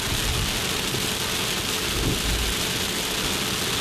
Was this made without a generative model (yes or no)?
yes